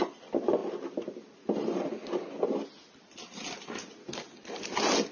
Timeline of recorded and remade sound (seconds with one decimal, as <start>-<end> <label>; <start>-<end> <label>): 0.0-5.1 recorded